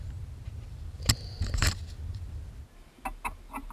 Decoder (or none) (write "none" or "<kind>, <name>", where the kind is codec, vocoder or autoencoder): none